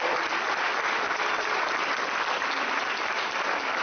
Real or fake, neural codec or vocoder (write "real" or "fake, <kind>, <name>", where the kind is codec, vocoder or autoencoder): fake, vocoder, BigVGAN v2